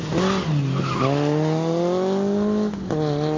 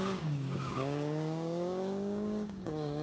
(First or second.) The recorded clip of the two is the first